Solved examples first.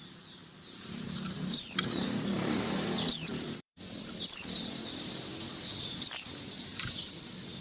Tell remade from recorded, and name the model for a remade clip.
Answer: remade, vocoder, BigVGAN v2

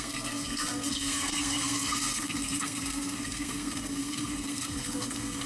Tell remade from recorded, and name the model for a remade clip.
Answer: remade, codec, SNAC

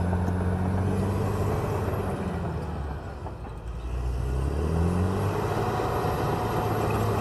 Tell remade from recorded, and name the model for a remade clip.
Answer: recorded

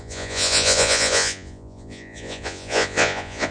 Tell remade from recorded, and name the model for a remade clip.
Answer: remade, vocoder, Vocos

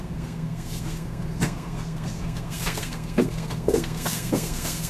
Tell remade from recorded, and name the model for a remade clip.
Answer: remade, codec, SNAC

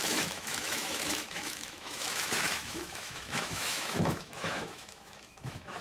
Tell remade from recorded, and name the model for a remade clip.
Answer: remade, autoencoder, DAC-VAE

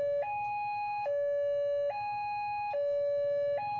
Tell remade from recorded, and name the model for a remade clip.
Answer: recorded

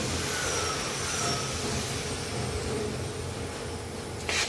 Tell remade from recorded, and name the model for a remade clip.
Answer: recorded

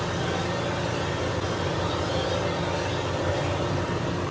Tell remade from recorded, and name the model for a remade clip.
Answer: recorded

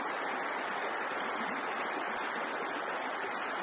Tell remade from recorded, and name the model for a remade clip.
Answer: recorded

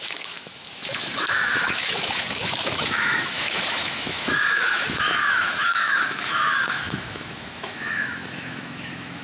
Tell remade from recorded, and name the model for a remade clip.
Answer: remade, autoencoder, DAC-VAE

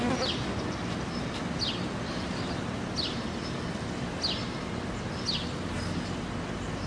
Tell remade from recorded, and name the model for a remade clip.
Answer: recorded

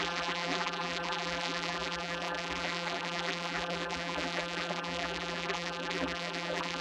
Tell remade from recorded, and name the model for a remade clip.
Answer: remade, vocoder, BigVGAN v2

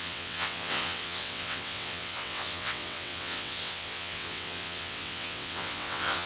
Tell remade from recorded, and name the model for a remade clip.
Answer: remade, vocoder, WaveNeXt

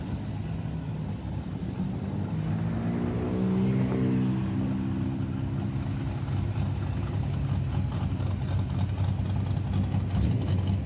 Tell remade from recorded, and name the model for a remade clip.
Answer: recorded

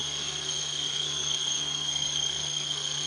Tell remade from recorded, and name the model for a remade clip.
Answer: remade, codec, SNAC